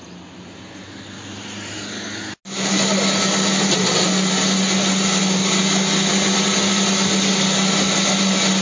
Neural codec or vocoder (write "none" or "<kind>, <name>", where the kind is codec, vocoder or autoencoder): none